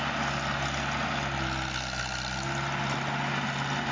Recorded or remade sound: recorded